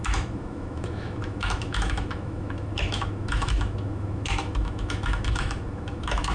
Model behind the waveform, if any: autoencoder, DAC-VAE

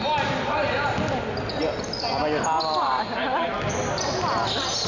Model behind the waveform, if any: none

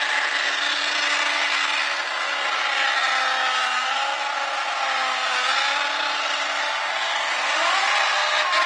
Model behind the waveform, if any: none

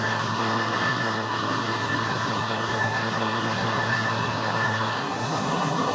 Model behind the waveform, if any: codec, SNAC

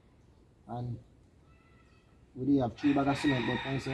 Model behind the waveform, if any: none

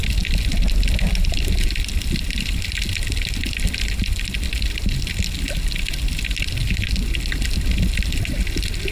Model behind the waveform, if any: none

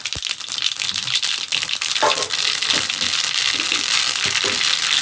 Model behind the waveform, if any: none